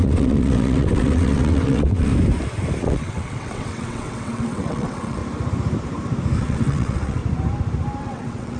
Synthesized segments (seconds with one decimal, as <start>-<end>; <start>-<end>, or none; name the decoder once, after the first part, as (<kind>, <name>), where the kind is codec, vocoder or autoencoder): 0.0-2.1 (vocoder, WaveNeXt); 2.8-5.2; 6.4-7.2; 8.0-8.6